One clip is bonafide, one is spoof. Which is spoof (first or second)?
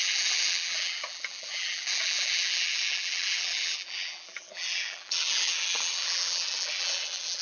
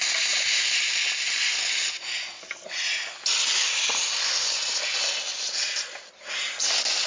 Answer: first